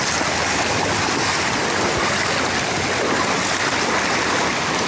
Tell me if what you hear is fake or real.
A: real